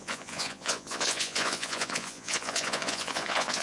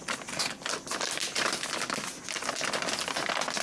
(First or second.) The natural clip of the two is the second